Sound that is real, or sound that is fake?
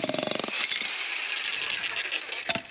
real